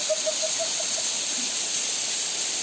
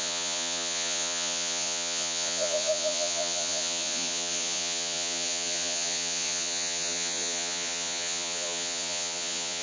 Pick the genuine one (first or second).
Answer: first